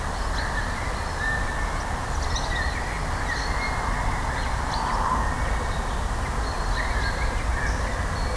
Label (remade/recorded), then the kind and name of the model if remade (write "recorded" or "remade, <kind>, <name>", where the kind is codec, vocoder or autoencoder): recorded